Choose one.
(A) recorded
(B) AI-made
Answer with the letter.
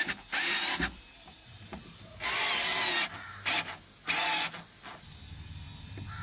A